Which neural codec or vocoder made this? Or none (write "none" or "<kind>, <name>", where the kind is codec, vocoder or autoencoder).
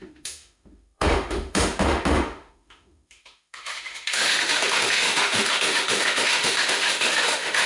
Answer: autoencoder, DAC-VAE